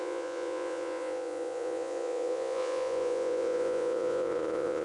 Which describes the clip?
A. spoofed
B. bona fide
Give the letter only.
A